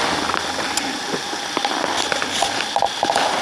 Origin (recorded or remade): recorded